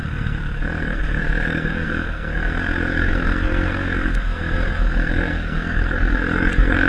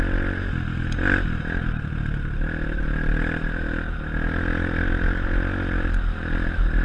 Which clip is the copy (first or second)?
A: first